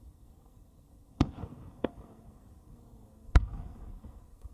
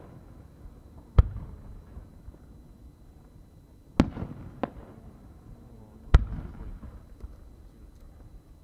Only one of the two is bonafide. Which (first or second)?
second